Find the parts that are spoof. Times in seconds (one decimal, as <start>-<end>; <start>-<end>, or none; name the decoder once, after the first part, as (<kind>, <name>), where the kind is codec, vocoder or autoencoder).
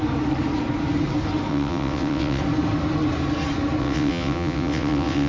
1.5-2.4 (vocoder, WaveNeXt); 3.8-5.3